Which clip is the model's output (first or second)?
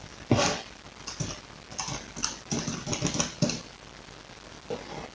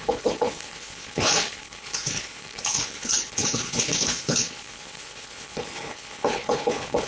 second